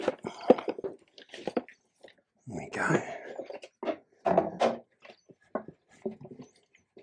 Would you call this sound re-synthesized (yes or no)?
no